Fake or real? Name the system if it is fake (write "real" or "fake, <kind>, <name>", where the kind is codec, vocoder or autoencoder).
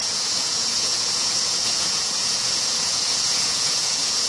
fake, vocoder, Vocos